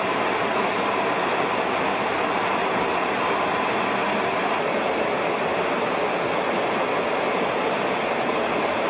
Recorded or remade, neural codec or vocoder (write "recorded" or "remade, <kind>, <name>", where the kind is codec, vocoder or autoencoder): recorded